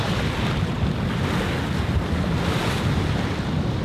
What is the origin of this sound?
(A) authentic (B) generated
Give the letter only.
A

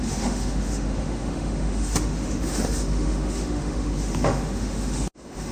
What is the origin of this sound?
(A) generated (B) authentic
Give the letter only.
A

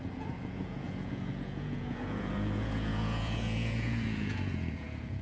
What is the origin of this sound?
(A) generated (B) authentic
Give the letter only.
A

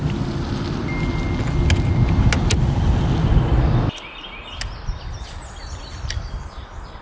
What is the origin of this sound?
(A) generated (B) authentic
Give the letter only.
B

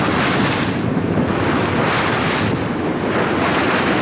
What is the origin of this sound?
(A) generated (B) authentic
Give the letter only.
A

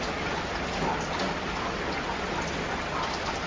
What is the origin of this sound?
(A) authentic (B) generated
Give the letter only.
A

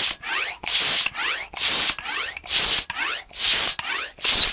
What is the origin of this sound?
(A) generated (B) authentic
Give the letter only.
B